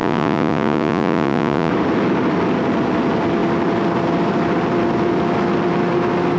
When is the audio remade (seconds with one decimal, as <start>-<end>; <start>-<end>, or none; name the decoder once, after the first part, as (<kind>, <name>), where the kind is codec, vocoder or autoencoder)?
0.0-1.7 (vocoder, Vocos)